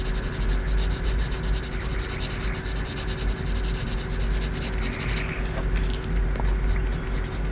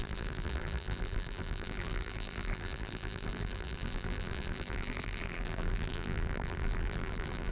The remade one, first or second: second